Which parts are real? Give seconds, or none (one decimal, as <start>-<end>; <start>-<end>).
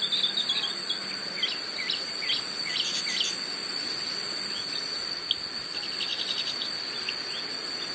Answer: 0.0-6.1; 6.7-7.9